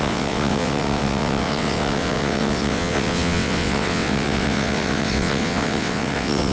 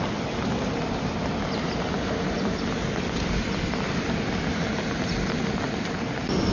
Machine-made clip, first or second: first